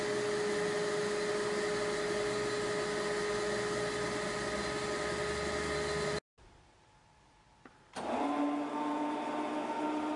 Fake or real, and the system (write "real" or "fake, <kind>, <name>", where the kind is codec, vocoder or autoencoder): real